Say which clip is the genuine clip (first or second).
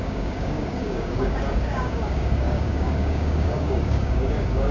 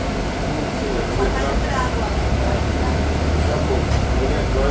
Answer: second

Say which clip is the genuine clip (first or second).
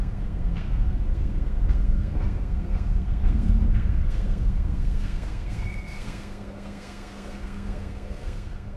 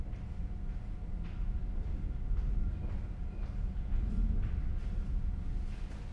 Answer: second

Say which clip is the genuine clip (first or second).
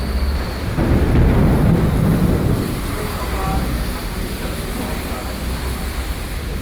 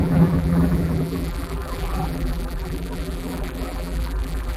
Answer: first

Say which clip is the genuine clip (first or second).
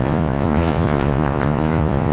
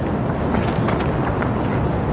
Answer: second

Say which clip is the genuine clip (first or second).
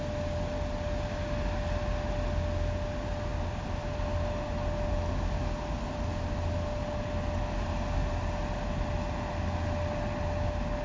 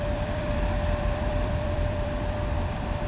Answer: first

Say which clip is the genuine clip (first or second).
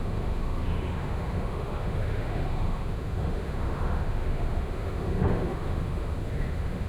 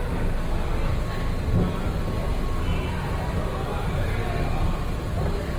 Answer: second